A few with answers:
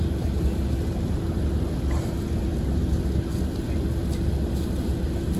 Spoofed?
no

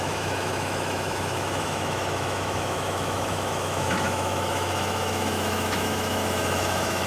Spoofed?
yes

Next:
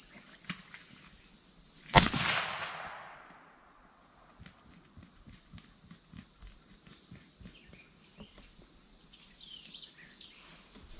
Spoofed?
no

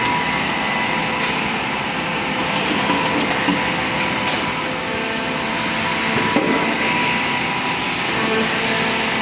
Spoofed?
no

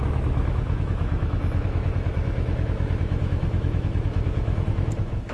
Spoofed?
yes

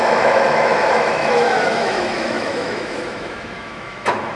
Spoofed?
yes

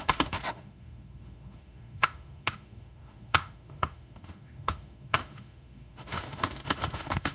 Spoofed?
yes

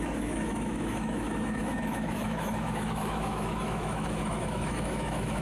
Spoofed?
yes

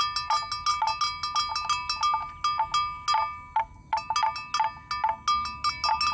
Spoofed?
no